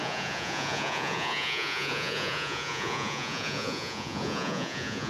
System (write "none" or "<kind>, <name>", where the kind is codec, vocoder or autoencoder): vocoder, Vocos